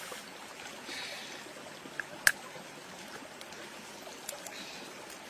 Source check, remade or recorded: recorded